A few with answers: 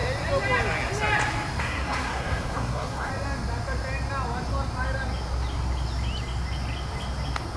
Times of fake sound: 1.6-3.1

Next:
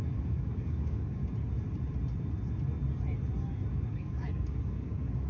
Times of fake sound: 0.0-1.2; 3.7-5.3

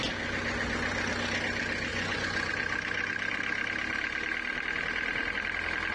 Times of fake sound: 1.9-2.5